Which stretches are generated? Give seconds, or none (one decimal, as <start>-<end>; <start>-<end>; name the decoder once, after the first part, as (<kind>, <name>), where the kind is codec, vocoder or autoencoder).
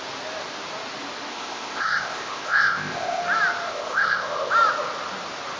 1.3-3.2 (codec, ZipCodec); 3.7-4.5